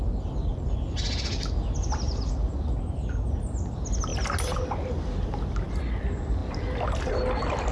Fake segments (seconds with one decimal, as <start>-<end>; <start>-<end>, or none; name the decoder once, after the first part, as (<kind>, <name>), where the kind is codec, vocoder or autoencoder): none